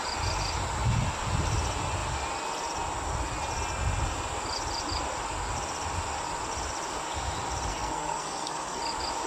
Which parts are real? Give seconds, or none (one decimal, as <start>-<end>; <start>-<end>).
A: 0.0-7.7; 8.8-9.3